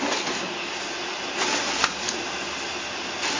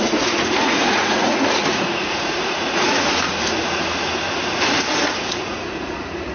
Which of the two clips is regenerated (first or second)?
second